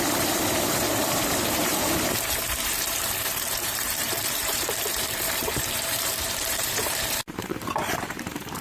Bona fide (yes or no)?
no